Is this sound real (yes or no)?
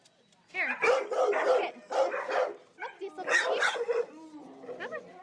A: yes